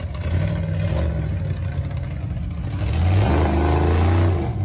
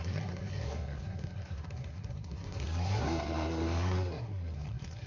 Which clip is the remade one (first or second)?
second